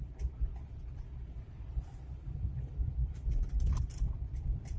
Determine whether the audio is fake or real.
fake